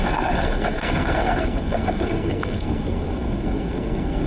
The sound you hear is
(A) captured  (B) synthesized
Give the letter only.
B